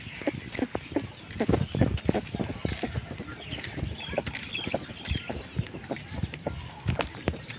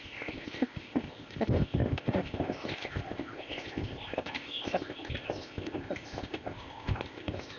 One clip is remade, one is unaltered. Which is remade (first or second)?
second